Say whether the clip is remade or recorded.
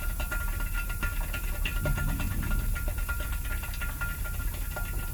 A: recorded